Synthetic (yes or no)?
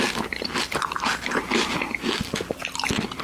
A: no